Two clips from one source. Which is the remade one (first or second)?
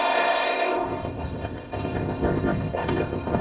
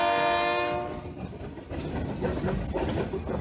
first